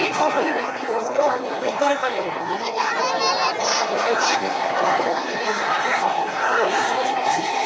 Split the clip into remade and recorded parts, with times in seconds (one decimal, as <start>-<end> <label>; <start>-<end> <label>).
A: 0.0-2.9 remade; 2.9-3.6 recorded; 3.6-7.7 remade